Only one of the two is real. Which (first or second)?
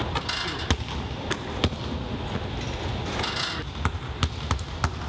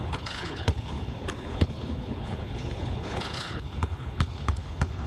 first